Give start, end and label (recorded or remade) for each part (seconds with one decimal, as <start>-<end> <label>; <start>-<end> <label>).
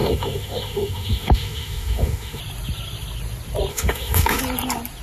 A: 0.0-2.4 remade; 2.4-3.7 recorded; 3.7-4.4 remade; 4.4-5.0 recorded